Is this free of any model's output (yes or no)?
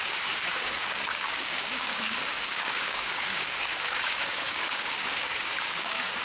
no